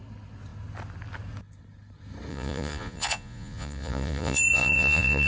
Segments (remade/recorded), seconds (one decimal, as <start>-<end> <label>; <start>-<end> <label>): 0.0-2.3 recorded; 2.3-5.3 remade